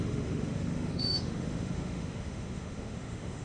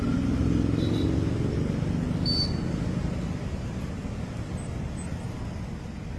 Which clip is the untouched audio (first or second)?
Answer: second